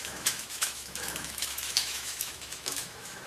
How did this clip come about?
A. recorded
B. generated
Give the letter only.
B